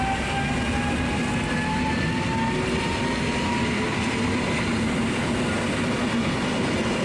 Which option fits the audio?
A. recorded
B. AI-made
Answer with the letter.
A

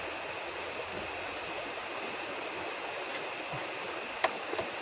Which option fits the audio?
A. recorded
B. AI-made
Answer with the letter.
A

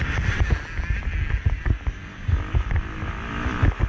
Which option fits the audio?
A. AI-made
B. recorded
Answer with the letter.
B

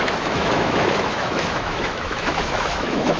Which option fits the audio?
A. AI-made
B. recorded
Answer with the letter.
A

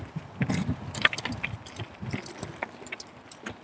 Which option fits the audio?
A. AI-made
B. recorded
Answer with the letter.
B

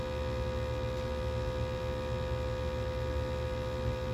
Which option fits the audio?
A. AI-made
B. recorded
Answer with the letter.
B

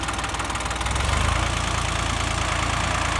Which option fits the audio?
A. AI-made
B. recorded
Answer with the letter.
B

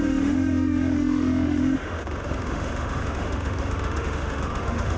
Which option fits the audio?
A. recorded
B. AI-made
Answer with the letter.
B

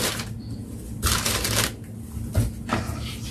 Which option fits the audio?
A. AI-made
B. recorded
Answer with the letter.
B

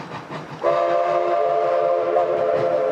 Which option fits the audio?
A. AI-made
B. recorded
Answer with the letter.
B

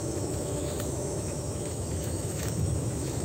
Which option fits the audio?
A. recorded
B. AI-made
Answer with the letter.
B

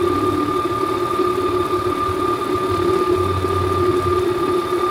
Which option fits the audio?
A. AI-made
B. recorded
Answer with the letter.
B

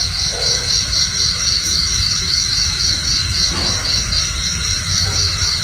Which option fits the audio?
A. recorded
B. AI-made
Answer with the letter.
B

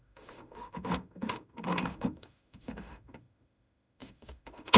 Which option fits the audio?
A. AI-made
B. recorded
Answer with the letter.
A